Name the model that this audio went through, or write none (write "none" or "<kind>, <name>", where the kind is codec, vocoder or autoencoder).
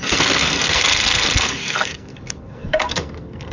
codec, SNAC